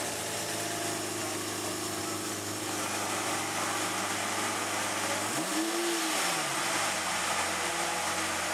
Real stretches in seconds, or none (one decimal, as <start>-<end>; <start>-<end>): 0.0-8.5